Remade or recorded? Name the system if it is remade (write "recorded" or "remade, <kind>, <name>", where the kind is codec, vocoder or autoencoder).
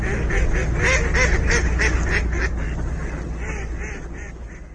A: recorded